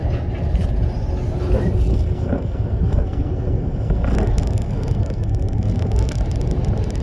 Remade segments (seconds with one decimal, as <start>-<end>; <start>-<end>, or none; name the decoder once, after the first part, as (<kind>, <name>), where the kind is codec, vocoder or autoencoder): 1.9-6.1 (codec, SNAC)